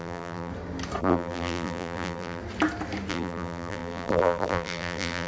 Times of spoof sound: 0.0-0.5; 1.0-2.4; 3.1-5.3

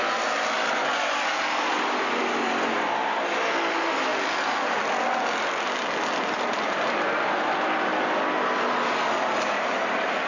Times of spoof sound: none